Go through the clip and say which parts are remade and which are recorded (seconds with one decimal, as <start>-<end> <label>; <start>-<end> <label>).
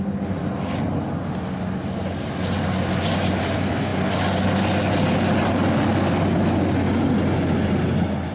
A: 0.0-8.3 recorded